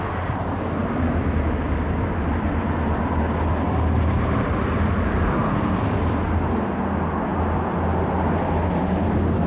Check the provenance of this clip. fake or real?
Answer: real